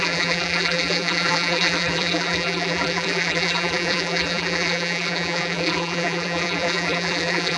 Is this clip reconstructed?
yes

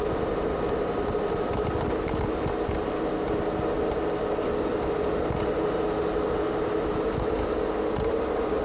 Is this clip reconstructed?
no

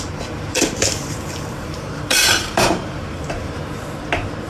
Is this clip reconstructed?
yes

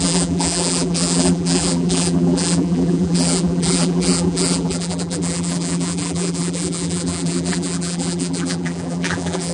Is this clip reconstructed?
yes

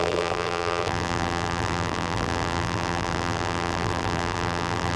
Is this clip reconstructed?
yes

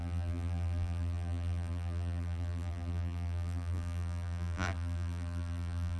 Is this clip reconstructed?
yes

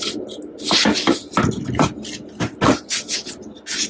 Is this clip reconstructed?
no